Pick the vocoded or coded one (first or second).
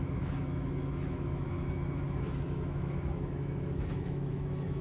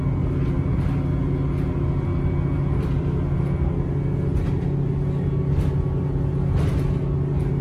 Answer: first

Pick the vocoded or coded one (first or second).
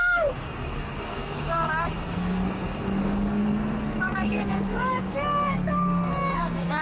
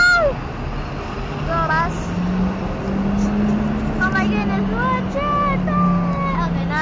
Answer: first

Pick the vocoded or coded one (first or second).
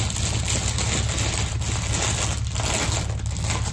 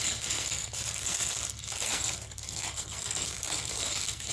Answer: second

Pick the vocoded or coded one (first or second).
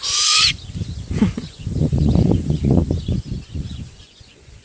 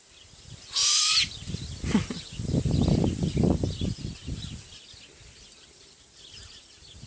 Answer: first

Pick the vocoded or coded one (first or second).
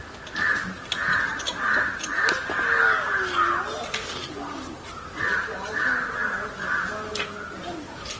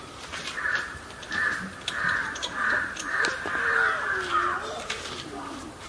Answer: second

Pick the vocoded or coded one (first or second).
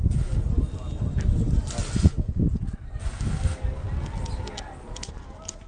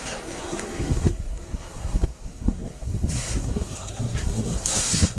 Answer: second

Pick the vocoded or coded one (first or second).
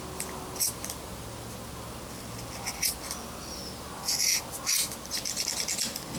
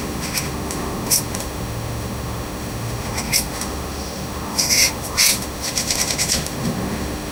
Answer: second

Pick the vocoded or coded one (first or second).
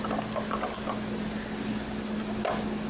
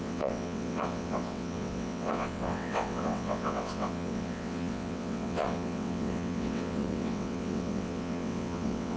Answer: second